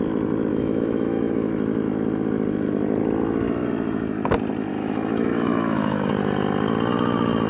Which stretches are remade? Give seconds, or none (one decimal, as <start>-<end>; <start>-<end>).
0.5-1.5; 4.7-6.1